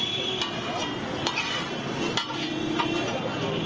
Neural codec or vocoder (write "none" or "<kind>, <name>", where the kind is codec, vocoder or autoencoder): none